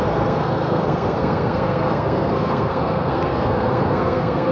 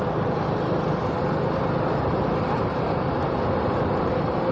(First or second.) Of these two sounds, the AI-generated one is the first